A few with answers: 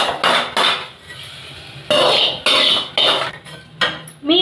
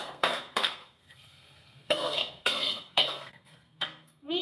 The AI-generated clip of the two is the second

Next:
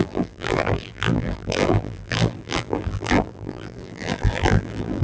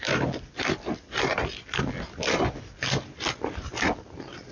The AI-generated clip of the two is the first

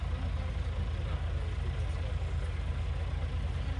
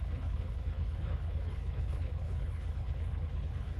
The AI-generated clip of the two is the second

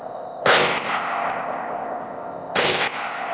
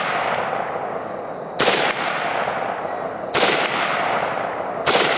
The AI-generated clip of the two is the first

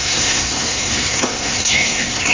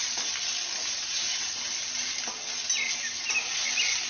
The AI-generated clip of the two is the first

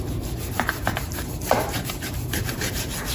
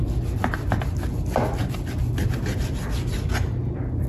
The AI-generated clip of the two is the first